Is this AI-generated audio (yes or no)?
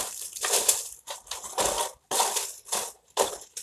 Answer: no